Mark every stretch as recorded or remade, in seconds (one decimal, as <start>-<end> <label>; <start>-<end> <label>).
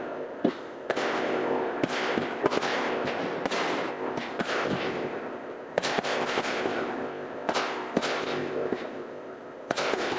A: 0.0-3.2 remade; 3.2-3.9 recorded; 3.9-10.2 remade